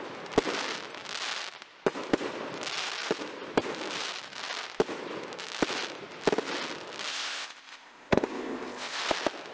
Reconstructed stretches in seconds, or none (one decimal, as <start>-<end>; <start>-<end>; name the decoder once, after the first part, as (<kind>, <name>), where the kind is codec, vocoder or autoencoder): 7.1-9.0 (codec, ZipCodec)